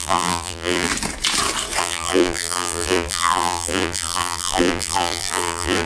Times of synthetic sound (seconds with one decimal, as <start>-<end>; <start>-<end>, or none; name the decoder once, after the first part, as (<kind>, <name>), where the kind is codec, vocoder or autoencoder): 0.0-0.9 (vocoder, BigVGAN v2); 1.8-5.9